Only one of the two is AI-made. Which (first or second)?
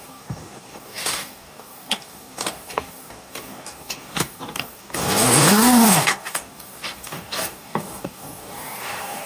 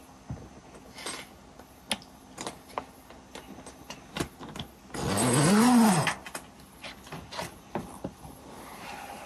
first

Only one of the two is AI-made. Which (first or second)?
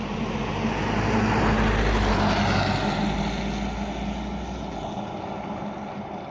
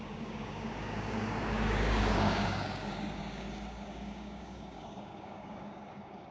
second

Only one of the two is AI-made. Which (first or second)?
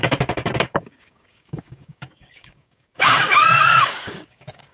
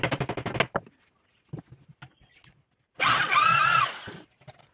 first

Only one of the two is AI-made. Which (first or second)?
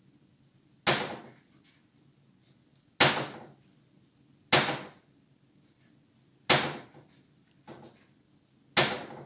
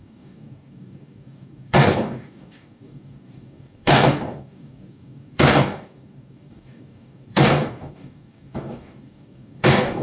second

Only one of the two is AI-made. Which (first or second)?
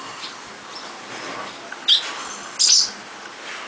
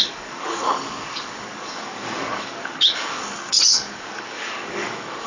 second